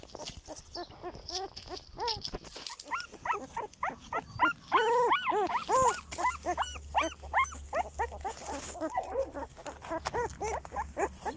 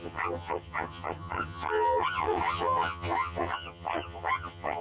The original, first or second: first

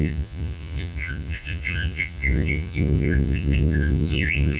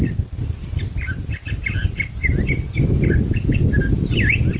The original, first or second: second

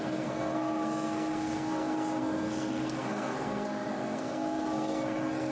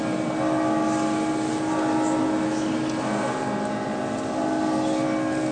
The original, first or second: second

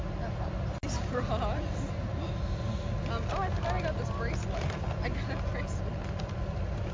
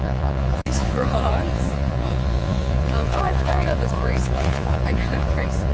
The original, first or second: first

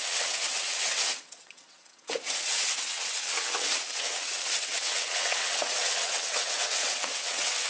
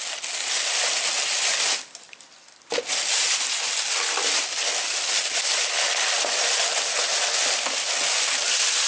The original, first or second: second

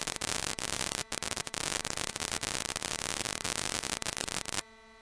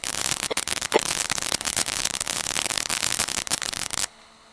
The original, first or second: first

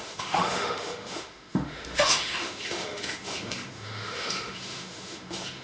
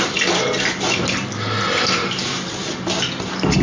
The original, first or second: second